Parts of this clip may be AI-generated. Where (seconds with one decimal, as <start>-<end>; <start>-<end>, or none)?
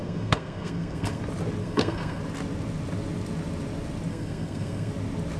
0.0-1.2; 1.6-2.2; 4.1-4.9